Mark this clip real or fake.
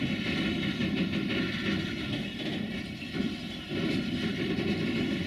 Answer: real